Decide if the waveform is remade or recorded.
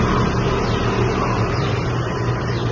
recorded